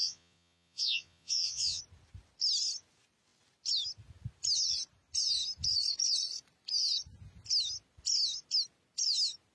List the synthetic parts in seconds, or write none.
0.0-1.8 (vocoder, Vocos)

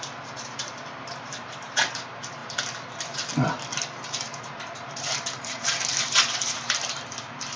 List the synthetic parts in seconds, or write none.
0.0-2.4 (vocoder, BigVGAN v2); 4.6-7.6